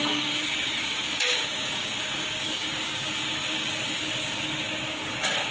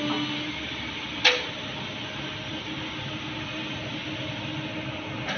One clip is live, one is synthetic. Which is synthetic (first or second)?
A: first